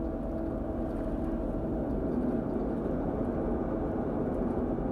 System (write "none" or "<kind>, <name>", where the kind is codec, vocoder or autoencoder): none